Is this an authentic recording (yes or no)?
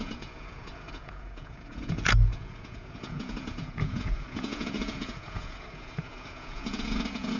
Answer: no